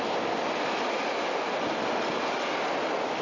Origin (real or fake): real